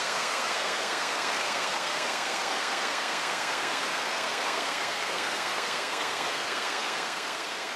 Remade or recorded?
remade